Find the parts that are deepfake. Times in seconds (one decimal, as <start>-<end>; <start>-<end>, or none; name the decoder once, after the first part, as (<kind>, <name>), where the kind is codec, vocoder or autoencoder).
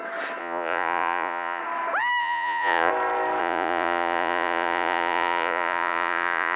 0.4-1.6 (vocoder, Vocos); 2.2-2.9; 3.4-6.6